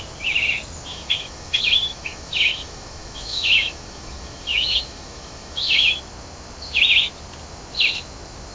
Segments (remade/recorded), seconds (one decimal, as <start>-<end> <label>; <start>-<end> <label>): 0.0-0.9 recorded; 0.9-5.9 remade; 5.9-8.5 recorded